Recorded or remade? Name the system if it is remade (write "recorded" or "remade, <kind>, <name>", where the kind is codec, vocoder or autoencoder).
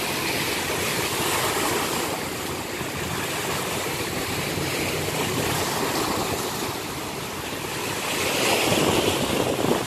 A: recorded